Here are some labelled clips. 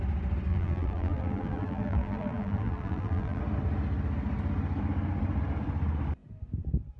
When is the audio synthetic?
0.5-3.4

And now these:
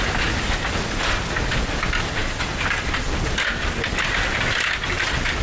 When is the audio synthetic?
none

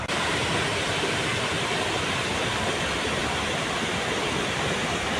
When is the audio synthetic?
0.0-1.3; 2.2-3.2; 4.2-5.2

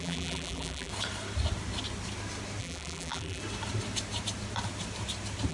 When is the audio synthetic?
0.0-0.9; 2.6-3.4

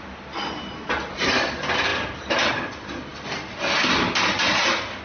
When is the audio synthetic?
1.9-2.5; 3.1-3.8